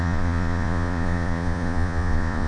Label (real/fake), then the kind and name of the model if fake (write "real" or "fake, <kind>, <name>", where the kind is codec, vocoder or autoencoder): fake, vocoder, Vocos